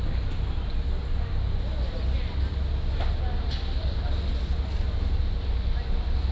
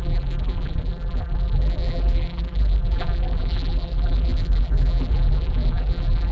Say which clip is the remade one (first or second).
second